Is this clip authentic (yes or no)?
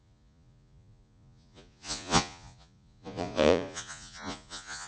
no